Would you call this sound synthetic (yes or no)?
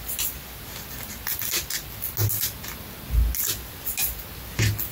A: no